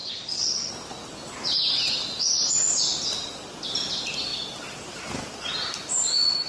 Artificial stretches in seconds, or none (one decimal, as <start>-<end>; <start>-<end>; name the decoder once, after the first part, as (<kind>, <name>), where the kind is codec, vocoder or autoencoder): 0.0-0.7 (vocoder, WaveNeXt)